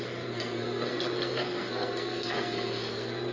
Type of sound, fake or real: fake